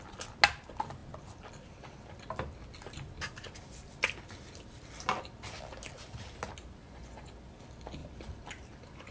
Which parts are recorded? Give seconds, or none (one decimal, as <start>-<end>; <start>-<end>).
0.0-6.8; 7.3-9.1